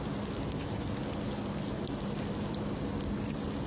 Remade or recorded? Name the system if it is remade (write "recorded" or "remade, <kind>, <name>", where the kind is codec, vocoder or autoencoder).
recorded